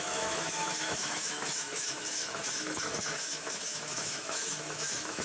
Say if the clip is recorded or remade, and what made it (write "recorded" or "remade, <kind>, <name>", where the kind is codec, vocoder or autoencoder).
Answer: remade, autoencoder, DAC-VAE